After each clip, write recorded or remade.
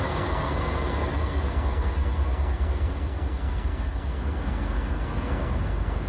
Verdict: remade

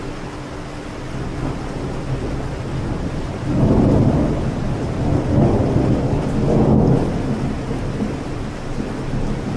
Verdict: recorded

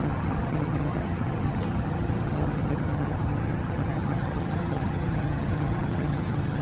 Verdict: remade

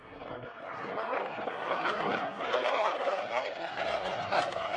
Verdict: remade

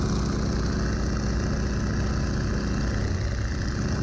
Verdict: recorded